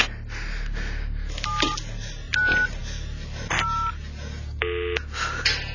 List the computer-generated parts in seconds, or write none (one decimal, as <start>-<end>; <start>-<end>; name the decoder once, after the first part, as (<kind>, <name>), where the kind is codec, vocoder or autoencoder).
none